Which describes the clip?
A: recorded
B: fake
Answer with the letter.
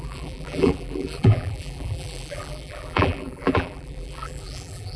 B